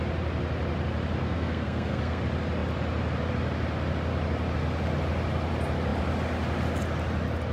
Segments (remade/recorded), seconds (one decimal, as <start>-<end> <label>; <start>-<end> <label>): 0.0-1.2 recorded; 1.2-2.2 remade; 2.2-7.5 recorded